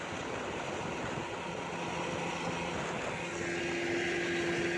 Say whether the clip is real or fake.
real